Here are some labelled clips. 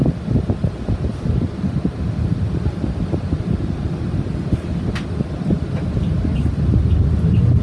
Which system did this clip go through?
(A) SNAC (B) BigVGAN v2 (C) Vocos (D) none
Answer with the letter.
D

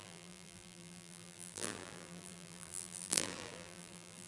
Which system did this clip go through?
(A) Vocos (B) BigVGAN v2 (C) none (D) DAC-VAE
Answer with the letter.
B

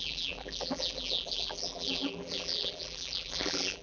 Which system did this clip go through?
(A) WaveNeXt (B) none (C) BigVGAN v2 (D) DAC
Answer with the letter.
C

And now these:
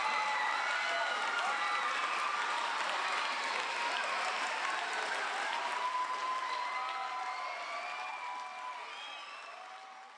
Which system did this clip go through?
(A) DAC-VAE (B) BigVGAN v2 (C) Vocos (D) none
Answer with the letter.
D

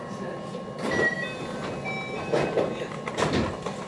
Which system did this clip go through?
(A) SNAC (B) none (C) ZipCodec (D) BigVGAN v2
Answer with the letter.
B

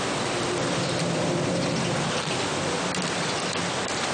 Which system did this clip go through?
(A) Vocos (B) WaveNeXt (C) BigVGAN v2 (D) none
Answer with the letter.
C